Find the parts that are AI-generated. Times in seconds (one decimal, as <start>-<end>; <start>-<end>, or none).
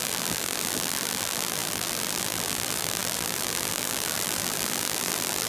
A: 0.0-5.5